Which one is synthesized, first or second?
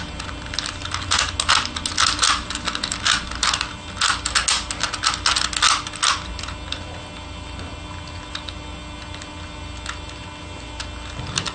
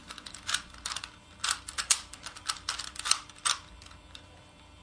second